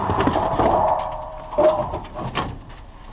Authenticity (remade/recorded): remade